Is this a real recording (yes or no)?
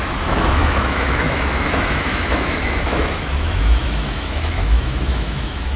no